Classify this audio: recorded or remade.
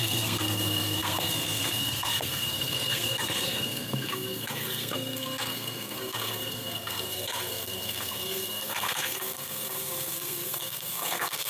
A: remade